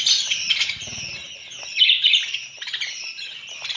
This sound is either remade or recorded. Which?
recorded